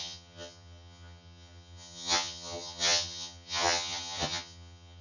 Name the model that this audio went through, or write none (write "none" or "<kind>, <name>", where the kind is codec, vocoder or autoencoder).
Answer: vocoder, HiFi-GAN